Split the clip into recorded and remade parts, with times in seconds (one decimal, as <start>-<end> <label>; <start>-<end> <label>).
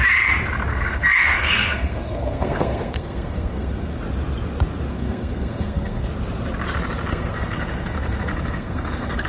0.0-0.7 recorded; 0.7-4.0 remade; 4.0-4.9 recorded; 4.9-6.1 remade; 6.1-7.1 recorded; 7.1-9.3 remade